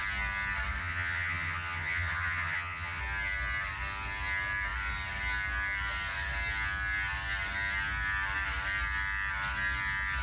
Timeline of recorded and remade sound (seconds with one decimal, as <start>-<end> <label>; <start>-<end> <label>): 0.0-0.8 recorded; 0.8-3.0 remade; 3.0-10.2 recorded